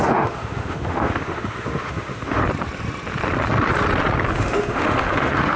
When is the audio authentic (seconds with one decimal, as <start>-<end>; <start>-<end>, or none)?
2.4-4.3

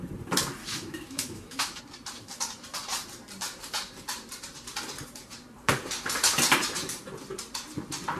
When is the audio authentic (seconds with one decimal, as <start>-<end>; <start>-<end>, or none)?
0.0-0.6; 1.8-8.2

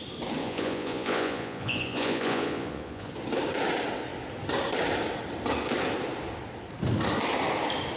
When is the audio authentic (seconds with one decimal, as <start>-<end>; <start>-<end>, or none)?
0.0-0.4; 3.1-8.0

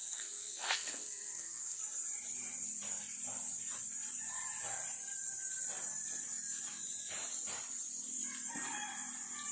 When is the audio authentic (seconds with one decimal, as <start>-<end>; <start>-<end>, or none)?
1.8-9.5

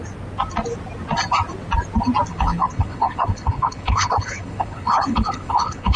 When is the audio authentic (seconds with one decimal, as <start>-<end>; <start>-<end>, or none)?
0.0-2.3

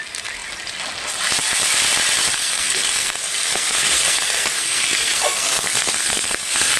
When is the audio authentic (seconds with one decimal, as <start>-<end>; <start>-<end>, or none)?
0.0-2.3

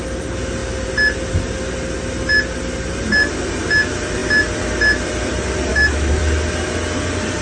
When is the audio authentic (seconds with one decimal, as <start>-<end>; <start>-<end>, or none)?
0.0-5.7; 6.2-7.4

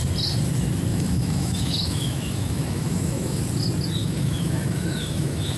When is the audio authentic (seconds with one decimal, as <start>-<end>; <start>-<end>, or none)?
0.0-0.9; 3.4-4.0